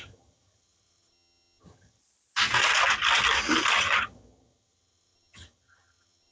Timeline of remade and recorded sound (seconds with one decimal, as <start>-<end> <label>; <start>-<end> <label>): 0.0-2.0 remade; 2.0-3.8 recorded; 3.8-6.3 remade